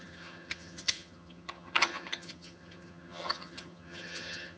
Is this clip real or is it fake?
fake